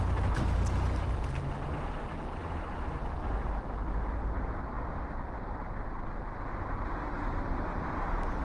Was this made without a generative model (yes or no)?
yes